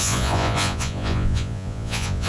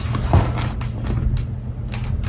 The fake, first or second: first